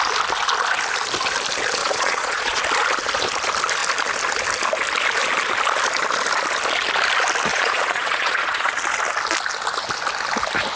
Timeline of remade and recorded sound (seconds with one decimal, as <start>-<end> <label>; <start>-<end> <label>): 0.0-1.8 recorded; 1.8-2.6 remade; 2.6-7.5 recorded; 7.5-8.7 remade; 8.7-10.8 recorded